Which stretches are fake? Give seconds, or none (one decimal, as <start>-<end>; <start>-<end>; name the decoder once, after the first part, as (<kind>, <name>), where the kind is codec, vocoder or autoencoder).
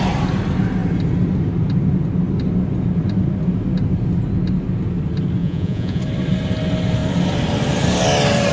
5.4-6.0 (vocoder, Vocos)